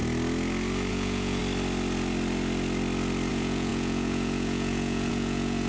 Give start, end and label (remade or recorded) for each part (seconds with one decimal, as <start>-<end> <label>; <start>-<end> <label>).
0.0-0.9 recorded; 0.9-1.4 remade; 1.4-3.3 recorded; 3.3-5.7 remade